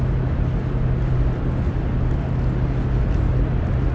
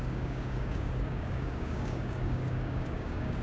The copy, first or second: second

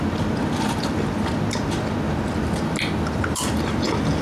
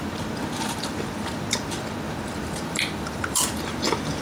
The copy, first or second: second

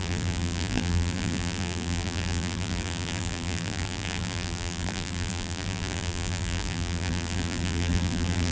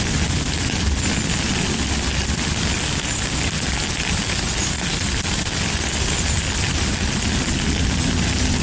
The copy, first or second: first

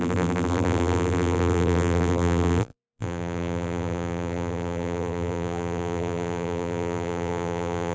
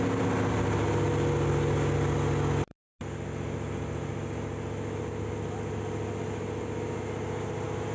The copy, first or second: first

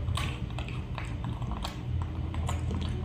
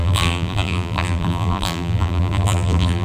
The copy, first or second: second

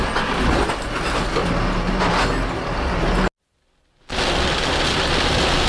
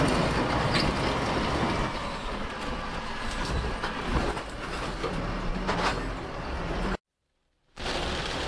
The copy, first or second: second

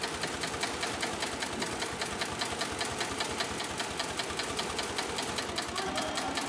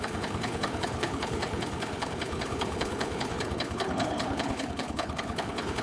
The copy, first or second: second